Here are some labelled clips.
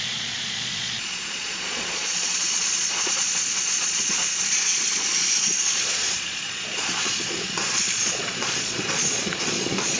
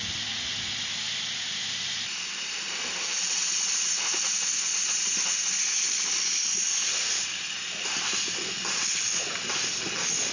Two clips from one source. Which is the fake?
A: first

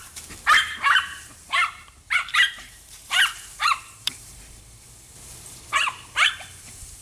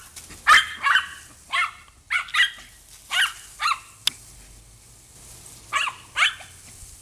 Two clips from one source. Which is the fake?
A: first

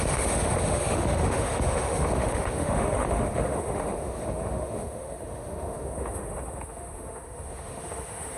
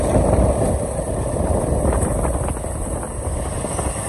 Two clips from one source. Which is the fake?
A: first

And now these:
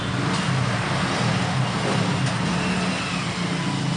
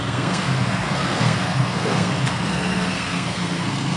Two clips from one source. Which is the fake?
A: second